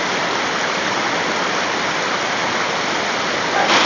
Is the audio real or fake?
real